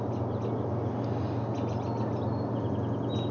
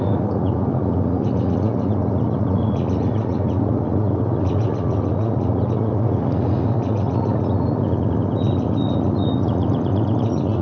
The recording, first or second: first